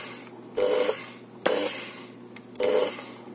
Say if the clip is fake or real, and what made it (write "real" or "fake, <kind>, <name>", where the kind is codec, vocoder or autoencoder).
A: real